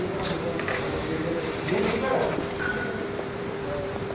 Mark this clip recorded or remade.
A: remade